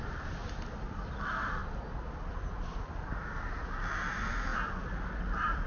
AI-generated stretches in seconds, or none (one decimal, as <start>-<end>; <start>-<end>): none